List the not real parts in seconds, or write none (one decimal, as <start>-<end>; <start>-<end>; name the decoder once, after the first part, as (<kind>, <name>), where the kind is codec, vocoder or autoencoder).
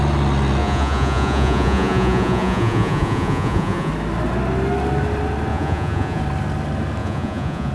0.6-3.9 (vocoder, Vocos); 5.5-6.2; 7.0-7.7